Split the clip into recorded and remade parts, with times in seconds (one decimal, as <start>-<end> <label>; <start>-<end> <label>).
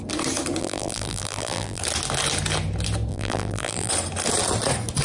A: 0.0-0.6 recorded; 0.6-1.8 remade; 1.8-3.1 recorded; 3.1-3.9 remade; 3.9-5.0 recorded